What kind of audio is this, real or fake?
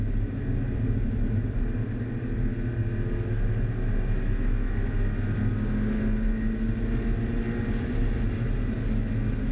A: real